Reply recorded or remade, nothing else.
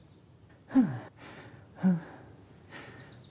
recorded